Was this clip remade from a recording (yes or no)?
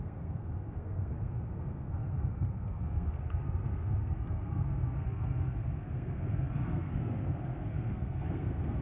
yes